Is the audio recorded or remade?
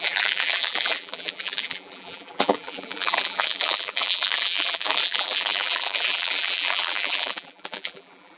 remade